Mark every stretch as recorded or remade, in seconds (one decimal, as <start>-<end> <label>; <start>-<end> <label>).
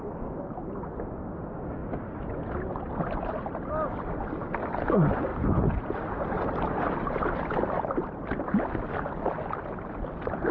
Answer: 0.0-10.5 recorded